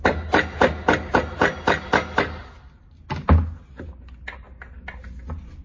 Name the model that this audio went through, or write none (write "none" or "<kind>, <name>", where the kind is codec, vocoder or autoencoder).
none